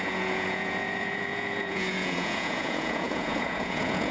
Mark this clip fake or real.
fake